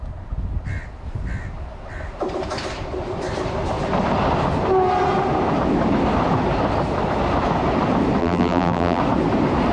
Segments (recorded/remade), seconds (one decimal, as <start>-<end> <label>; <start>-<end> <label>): 0.0-8.2 recorded; 8.2-9.0 remade; 9.0-9.7 recorded